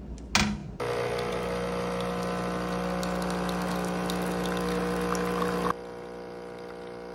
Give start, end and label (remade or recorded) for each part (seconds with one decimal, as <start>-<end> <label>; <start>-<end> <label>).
0.0-7.1 recorded

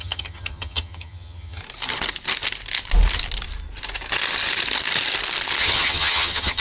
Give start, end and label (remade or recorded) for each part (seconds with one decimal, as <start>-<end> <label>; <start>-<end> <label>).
0.0-1.6 remade; 1.6-5.6 recorded; 5.6-6.6 remade

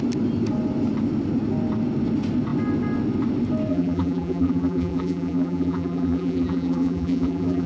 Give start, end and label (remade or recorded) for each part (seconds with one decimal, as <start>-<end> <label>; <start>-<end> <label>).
0.0-3.7 recorded; 3.7-7.7 remade

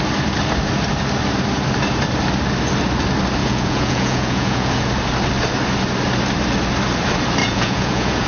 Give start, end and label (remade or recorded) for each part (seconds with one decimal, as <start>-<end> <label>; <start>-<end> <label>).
0.0-3.4 recorded; 3.4-4.9 remade; 4.9-7.4 recorded; 7.4-8.3 remade

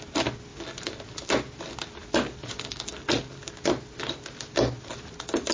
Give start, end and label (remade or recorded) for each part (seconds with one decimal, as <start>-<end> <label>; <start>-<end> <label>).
0.0-5.5 recorded

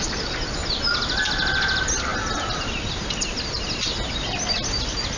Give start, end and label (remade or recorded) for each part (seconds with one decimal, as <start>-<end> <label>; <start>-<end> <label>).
0.0-5.2 recorded

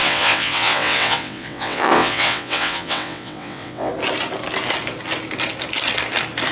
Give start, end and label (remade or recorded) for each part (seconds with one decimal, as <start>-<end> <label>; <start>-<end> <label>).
0.0-3.9 remade; 3.9-6.5 recorded